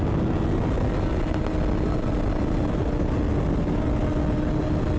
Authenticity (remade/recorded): recorded